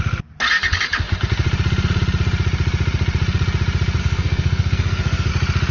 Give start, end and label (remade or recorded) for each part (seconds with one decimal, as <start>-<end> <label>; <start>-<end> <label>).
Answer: 0.0-4.0 recorded; 4.0-5.3 remade; 5.3-5.7 recorded